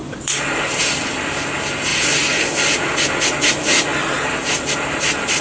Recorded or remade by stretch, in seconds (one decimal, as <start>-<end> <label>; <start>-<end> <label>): 0.0-1.0 remade; 1.0-3.9 recorded; 3.9-5.4 remade